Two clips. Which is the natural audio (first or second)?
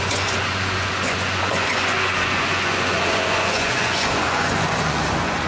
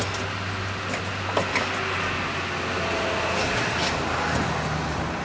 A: second